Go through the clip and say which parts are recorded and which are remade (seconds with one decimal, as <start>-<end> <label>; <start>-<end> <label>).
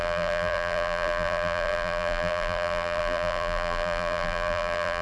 0.0-5.0 remade